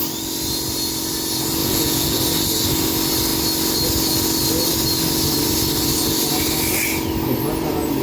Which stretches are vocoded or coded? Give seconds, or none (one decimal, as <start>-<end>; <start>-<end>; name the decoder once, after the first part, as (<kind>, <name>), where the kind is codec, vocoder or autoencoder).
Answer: 1.6-2.2 (vocoder, Vocos)